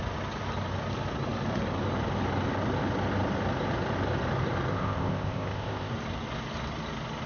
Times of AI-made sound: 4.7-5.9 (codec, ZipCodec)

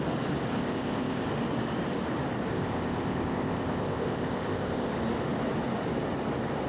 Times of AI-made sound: 0.5-1.3 (codec, ZipCodec); 2.5-4.9

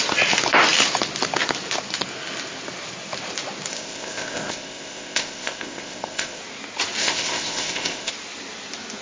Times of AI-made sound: 3.7-6.4 (codec, ZipCodec); 7.0-8.1

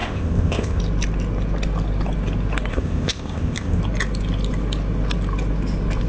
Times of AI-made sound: 0.0-0.8 (codec, ZipCodec); 2.7-3.8

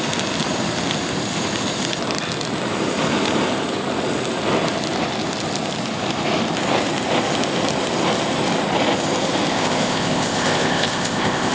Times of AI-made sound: 9.5-11.5 (codec, ZipCodec)